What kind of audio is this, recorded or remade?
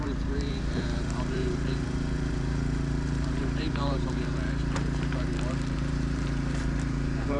remade